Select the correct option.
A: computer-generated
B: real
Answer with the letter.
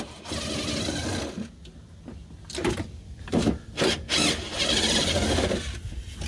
B